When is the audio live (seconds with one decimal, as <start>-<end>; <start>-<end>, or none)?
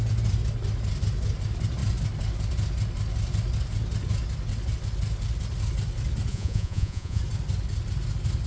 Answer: 0.0-6.3; 7.2-8.5